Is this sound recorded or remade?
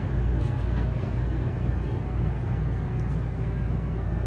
remade